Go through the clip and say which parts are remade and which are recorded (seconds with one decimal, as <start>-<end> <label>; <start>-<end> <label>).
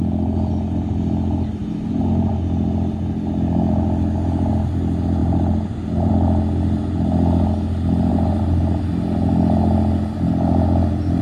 0.0-1.6 recorded; 1.6-2.3 remade; 2.3-5.2 recorded; 5.2-6.1 remade; 6.1-8.1 recorded; 8.1-8.8 remade; 8.8-11.2 recorded